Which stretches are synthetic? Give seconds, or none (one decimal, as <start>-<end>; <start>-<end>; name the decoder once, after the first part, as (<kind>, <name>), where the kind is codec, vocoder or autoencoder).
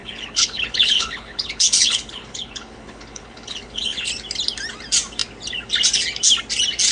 0.0-4.1 (codec, HILCodec)